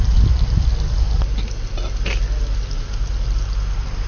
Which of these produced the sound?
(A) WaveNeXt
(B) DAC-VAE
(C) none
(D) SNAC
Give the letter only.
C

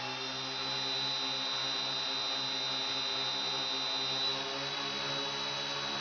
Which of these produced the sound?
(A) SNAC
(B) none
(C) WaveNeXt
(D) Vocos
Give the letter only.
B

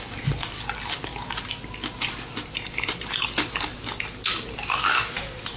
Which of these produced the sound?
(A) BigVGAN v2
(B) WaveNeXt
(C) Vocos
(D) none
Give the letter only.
D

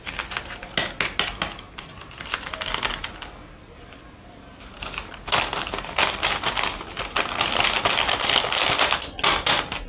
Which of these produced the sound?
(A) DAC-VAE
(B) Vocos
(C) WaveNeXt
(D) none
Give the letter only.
D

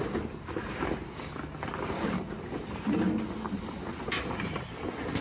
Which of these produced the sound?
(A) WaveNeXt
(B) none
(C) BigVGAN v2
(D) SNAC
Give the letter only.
B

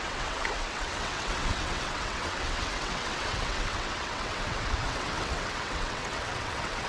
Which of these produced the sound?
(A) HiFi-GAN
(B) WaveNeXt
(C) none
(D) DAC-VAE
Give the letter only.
B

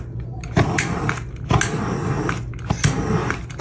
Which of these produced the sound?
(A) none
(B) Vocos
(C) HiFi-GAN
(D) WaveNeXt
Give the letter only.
A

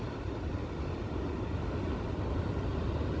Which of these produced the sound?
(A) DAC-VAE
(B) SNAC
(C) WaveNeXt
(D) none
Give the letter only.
D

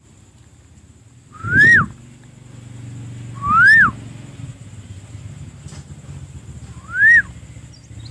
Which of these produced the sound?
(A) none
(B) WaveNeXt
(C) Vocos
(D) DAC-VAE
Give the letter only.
A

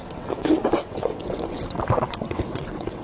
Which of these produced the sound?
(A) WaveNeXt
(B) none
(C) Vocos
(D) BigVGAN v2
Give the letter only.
A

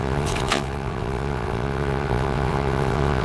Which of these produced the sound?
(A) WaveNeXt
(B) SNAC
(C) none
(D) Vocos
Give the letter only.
A